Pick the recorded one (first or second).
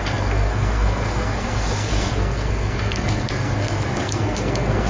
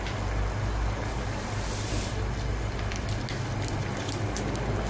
second